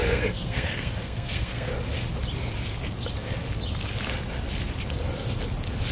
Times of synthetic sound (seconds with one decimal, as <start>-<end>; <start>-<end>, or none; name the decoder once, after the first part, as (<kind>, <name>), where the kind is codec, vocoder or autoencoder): 0.0-1.7 (codec, SNAC)